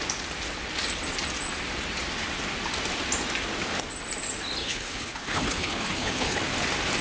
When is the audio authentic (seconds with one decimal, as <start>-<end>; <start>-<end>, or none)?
0.0-4.6; 6.4-7.0